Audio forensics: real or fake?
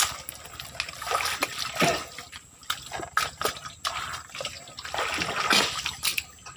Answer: real